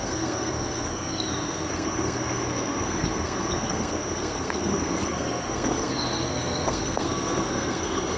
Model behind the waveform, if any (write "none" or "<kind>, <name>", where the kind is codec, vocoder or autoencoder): codec, SNAC